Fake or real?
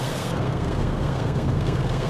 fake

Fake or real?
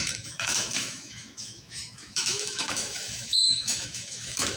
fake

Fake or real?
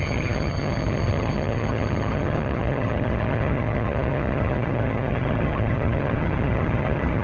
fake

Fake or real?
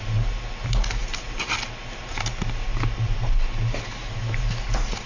real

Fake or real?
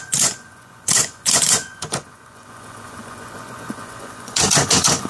fake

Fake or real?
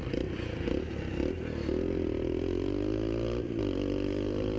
real